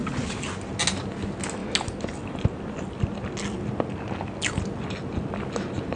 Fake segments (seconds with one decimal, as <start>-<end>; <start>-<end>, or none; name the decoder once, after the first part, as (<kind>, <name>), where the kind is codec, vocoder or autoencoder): none